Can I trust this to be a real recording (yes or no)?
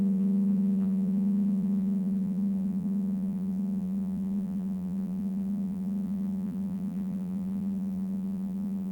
no